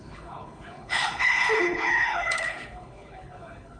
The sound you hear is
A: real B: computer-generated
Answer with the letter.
B